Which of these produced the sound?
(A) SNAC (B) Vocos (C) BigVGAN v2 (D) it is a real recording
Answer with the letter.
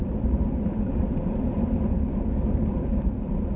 D